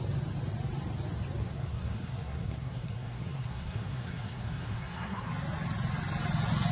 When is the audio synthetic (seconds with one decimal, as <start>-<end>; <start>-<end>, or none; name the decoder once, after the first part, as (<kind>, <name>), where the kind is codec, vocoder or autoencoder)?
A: 1.4-5.3 (codec, SNAC)